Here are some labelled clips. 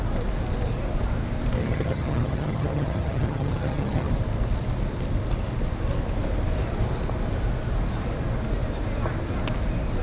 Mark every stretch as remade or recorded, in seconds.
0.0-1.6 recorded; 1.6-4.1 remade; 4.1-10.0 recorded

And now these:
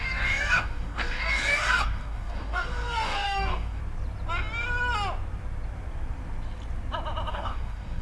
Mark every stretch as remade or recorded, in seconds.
0.0-3.8 remade; 3.8-7.3 recorded; 7.3-8.0 remade

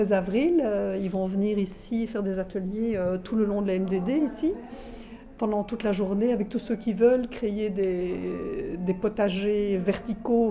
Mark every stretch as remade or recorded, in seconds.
0.0-1.8 recorded; 1.8-4.2 remade; 4.2-10.5 recorded

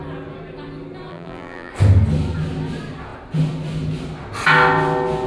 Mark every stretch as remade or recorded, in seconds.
0.0-1.1 recorded; 1.1-1.7 remade; 1.7-5.3 recorded

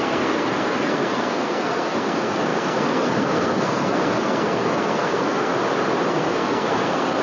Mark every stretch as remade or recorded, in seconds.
0.0-5.5 remade; 5.5-6.1 recorded; 6.1-7.2 remade

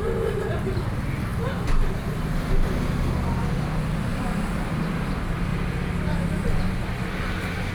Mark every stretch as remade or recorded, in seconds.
0.0-1.3 remade; 1.3-3.5 recorded; 3.5-5.5 remade; 5.5-7.7 recorded

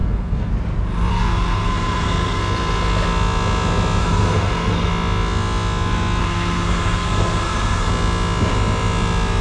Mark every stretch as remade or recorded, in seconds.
0.0-0.5 remade; 0.5-1.1 recorded; 1.1-2.4 remade; 2.4-4.0 recorded; 4.0-4.9 remade; 4.9-6.2 recorded; 6.2-7.9 remade; 7.9-9.4 recorded